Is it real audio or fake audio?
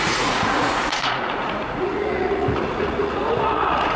fake